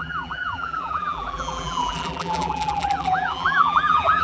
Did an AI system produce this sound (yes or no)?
yes